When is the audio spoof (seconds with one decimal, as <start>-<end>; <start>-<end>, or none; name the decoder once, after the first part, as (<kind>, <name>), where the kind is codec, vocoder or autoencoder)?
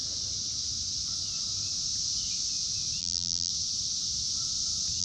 3.0-3.5 (vocoder, BigVGAN v2)